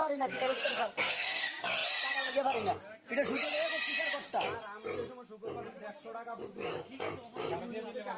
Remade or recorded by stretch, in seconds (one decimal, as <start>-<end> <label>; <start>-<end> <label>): 0.0-1.4 remade; 1.4-8.2 recorded